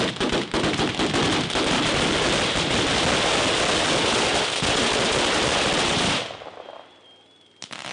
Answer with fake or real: real